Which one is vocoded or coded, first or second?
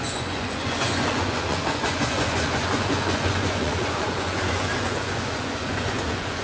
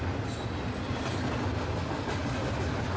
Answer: first